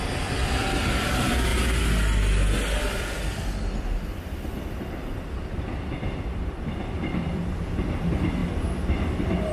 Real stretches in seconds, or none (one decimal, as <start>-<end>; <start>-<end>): 1.5-5.6